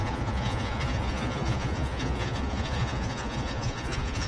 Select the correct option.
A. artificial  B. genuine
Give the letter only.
A